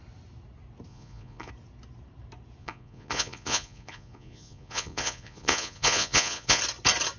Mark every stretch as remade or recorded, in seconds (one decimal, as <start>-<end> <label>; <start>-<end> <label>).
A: 0.0-0.9 recorded; 0.9-1.5 remade; 1.5-2.6 recorded; 2.6-6.6 remade; 6.6-7.2 recorded